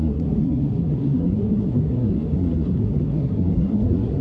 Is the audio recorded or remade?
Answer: remade